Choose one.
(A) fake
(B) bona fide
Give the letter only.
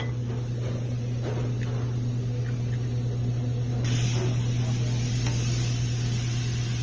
B